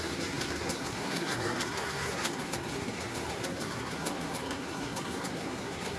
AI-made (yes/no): yes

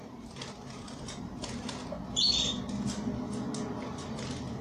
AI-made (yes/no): no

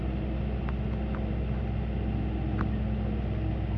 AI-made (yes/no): no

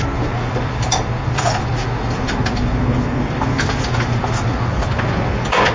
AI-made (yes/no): no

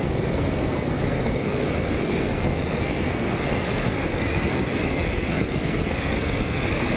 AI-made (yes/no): yes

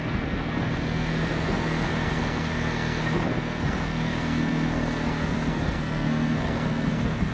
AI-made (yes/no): yes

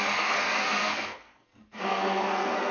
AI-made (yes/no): yes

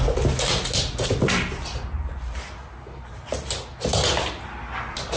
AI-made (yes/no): no